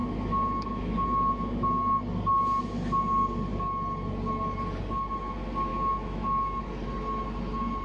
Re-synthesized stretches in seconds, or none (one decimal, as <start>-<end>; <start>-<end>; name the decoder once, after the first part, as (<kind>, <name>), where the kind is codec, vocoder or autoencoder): 0.0-2.0 (autoencoder, DAC-VAE); 5.7-6.6